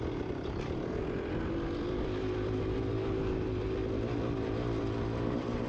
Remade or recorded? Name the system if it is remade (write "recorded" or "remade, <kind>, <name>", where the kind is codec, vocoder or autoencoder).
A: recorded